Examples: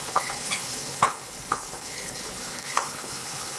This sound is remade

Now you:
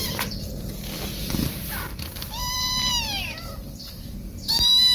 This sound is remade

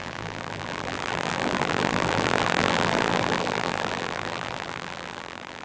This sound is remade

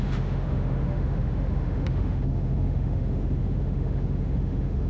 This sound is remade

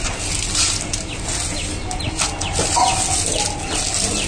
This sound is recorded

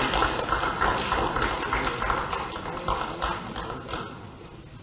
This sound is recorded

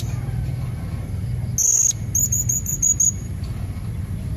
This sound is recorded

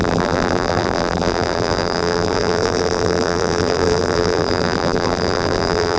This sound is remade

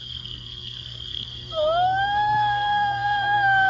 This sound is remade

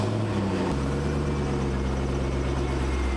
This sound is recorded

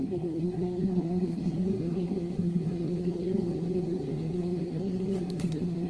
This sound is remade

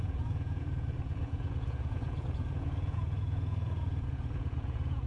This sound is remade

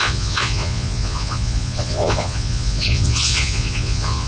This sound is remade